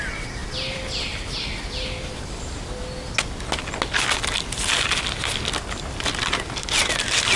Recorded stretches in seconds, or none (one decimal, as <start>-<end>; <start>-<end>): 0.0-0.4; 2.4-7.4